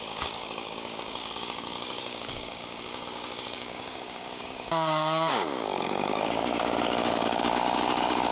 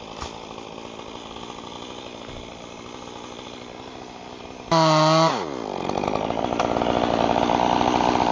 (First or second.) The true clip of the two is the second